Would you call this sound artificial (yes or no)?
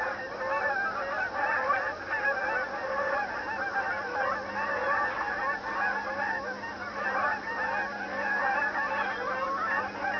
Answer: no